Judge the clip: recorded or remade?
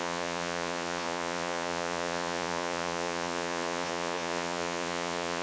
remade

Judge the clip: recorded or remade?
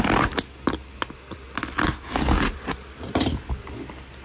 recorded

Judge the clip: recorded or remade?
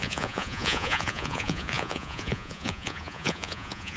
remade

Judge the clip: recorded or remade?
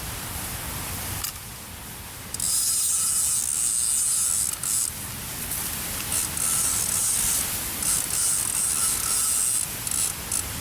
recorded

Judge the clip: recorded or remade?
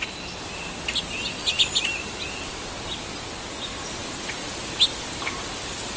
recorded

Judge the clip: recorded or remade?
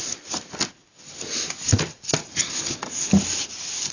recorded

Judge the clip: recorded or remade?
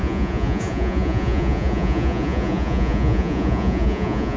remade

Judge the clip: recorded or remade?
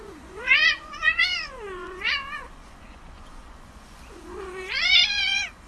remade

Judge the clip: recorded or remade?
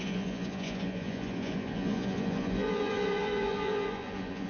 remade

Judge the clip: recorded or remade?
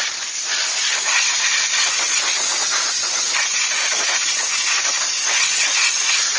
recorded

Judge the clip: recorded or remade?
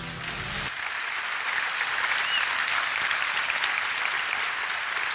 recorded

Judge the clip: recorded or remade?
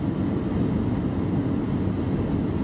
recorded